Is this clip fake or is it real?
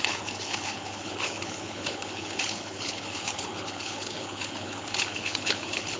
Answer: fake